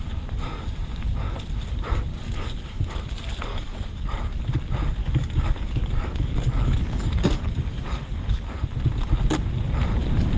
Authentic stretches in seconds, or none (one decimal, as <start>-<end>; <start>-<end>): 0.0-2.1; 2.9-3.5; 4.4-5.0; 8.3-10.4